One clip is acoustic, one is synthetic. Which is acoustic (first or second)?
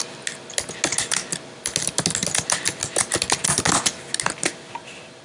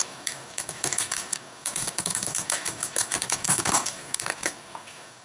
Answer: first